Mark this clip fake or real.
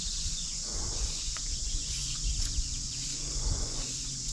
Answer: fake